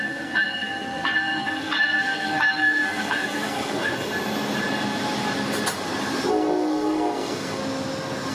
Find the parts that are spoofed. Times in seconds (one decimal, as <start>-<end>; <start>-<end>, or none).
0.0-4.1; 6.3-7.6